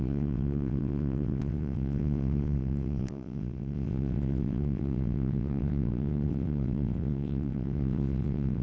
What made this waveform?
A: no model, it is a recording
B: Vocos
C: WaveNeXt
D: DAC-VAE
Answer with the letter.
C